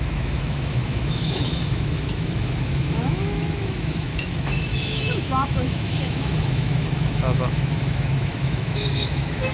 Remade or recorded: remade